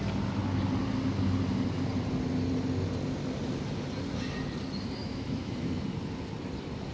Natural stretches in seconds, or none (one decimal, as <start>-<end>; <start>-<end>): 0.0-5.0; 5.7-6.9